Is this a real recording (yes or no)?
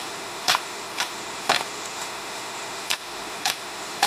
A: no